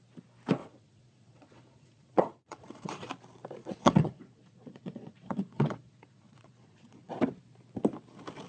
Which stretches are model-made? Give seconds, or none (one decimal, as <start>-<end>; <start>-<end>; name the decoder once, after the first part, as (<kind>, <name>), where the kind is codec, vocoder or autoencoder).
0.6-3.1 (vocoder, Vocos); 3.6-7.1